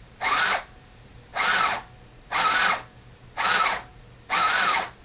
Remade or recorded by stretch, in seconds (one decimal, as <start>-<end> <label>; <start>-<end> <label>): 0.0-1.3 remade; 1.3-4.3 recorded; 4.3-5.0 remade